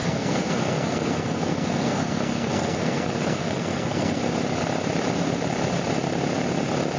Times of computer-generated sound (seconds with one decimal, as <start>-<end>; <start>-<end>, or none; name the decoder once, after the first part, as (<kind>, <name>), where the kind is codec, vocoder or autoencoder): 0.0-4.2 (codec, SNAC)